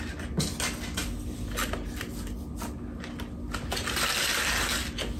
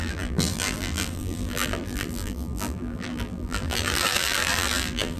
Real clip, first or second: first